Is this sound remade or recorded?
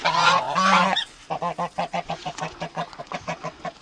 remade